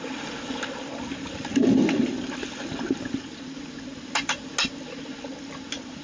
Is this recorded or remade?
recorded